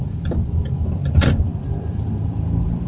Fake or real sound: fake